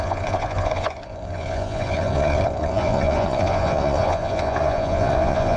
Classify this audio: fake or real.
fake